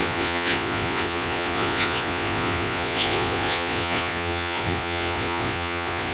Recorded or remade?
remade